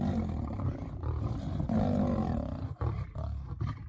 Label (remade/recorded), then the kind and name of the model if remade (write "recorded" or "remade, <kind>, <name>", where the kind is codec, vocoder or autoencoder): recorded